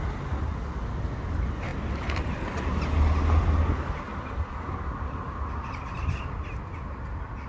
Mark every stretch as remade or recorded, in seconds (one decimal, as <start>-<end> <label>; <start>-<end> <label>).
0.0-7.5 recorded